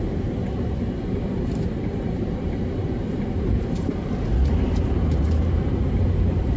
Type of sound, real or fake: fake